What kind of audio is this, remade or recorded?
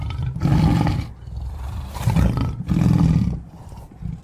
remade